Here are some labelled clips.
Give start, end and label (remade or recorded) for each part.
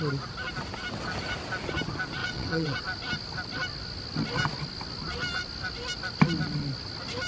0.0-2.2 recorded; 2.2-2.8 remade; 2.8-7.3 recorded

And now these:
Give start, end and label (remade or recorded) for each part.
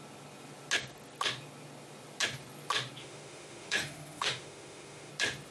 0.0-3.0 recorded; 3.0-5.1 remade; 5.1-5.5 recorded